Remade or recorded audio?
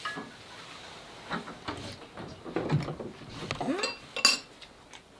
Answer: recorded